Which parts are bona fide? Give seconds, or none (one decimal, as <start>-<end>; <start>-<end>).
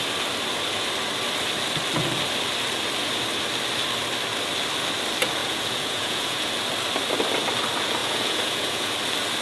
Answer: 0.0-5.4; 6.5-8.0; 8.9-9.4